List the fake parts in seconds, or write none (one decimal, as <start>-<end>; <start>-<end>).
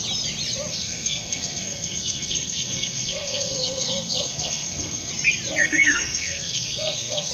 0.7-5.1; 5.6-7.3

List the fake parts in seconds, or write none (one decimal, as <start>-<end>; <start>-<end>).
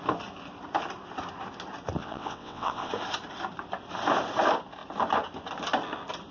2.0-2.9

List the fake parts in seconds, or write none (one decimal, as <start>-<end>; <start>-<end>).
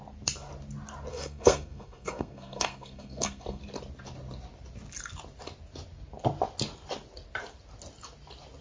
1.1-3.6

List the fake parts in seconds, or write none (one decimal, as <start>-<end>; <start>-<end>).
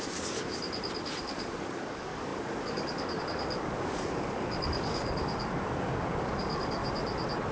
0.0-0.5; 1.2-6.8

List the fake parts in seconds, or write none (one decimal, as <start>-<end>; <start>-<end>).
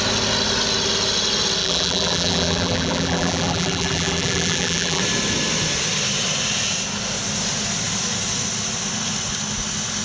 1.6-5.0